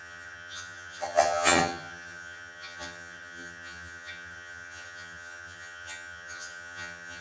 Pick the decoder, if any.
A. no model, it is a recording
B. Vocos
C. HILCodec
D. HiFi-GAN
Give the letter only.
D